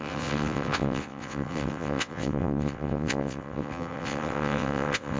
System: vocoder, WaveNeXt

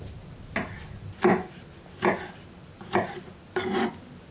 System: none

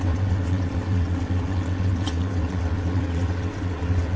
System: vocoder, WaveNeXt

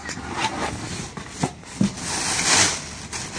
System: none